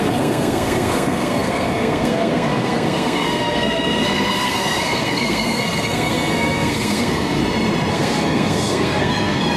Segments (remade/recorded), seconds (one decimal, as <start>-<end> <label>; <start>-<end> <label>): 0.0-7.4 remade; 7.4-7.9 recorded; 7.9-9.6 remade